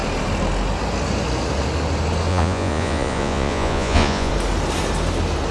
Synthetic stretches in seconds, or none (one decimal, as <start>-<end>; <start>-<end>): 2.3-4.3